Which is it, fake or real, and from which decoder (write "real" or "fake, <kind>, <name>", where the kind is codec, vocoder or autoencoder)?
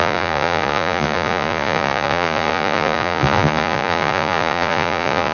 fake, vocoder, Vocos